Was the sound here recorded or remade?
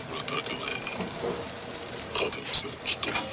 recorded